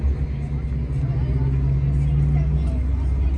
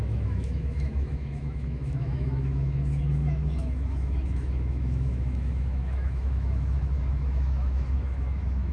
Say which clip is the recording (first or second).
first